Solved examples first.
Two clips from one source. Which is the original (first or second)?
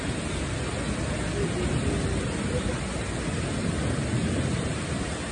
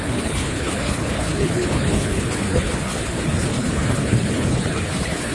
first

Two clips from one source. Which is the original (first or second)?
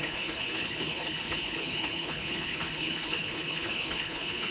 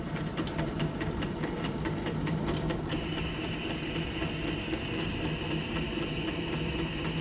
second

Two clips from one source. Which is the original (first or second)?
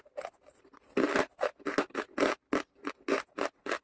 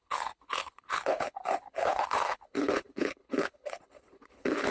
first